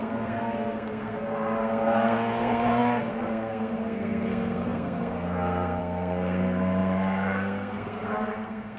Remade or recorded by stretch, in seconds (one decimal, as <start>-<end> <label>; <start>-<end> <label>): 0.0-8.8 remade